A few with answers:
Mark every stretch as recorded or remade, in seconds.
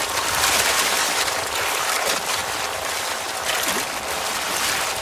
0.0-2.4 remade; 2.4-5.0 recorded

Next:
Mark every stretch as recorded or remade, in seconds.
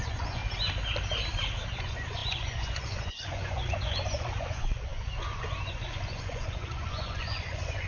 0.0-0.4 remade; 0.4-1.8 recorded; 1.8-7.9 remade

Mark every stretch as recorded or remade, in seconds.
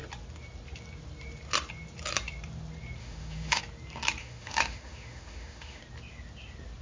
0.0-3.0 recorded; 3.0-3.6 remade; 3.6-4.2 recorded; 4.2-5.8 remade; 5.8-6.8 recorded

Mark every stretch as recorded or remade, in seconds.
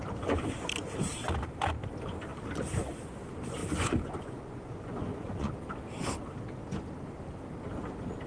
0.0-3.6 recorded; 3.6-5.5 remade; 5.5-8.3 recorded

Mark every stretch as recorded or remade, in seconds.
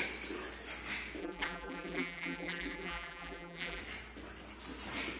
0.0-1.2 recorded; 1.2-3.8 remade; 3.8-5.2 recorded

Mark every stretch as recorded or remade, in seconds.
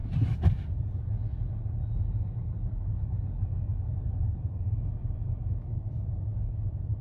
0.0-4.2 recorded; 4.2-6.3 remade; 6.3-7.0 recorded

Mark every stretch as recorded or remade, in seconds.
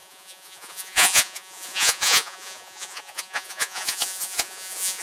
0.0-5.0 remade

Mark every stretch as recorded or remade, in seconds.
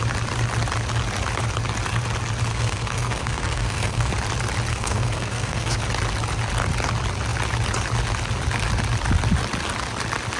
0.0-2.5 recorded; 2.5-4.1 remade; 4.1-4.7 recorded; 4.7-5.8 remade; 5.8-10.4 recorded